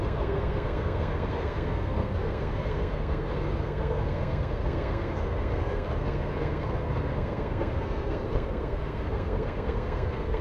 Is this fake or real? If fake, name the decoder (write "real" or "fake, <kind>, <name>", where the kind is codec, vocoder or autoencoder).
fake, codec, SNAC